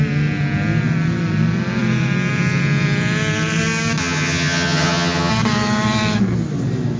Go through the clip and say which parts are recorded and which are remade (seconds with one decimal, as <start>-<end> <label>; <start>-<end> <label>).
0.0-4.0 recorded; 4.0-5.3 remade; 5.3-7.0 recorded